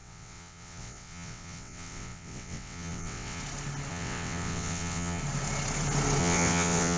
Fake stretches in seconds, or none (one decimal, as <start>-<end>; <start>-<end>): 0.0-3.4; 3.9-5.2; 6.2-7.0